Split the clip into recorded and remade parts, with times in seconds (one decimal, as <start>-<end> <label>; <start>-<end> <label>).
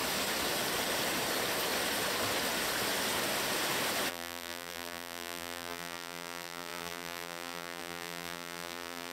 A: 0.0-4.1 recorded; 4.1-9.1 remade